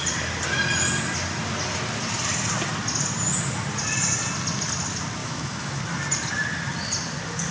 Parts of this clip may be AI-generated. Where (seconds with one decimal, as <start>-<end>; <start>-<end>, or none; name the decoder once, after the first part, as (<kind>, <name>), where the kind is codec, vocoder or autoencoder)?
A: 5.2-5.8 (autoencoder, DAC-VAE)